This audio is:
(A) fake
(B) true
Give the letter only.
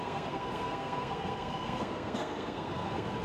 A